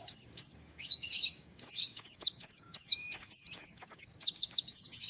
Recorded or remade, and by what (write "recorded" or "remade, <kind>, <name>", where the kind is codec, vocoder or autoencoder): remade, codec, DAC